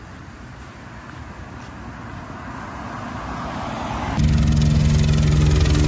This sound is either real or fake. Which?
real